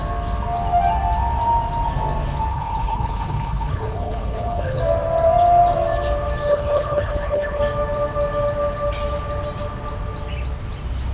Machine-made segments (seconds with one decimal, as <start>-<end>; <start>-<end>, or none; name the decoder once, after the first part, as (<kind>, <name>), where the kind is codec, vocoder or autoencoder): 2.5-4.8 (codec, HILCodec); 6.5-7.6